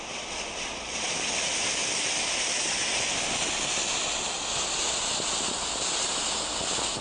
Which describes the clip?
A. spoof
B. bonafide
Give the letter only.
B